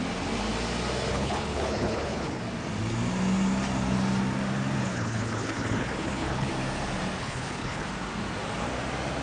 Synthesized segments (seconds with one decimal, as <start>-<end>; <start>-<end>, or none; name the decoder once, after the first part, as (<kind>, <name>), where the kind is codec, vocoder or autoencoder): 1.1-2.4 (codec, HILCodec); 4.8-6.5; 7.2-7.9